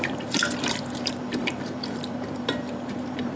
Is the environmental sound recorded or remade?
remade